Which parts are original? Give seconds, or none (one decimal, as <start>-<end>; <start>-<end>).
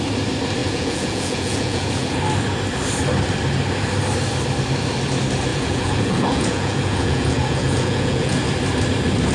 0.0-0.6; 2.2-5.5; 8.4-9.3